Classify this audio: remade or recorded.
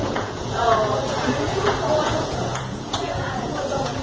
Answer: remade